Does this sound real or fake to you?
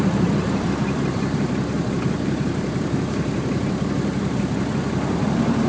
fake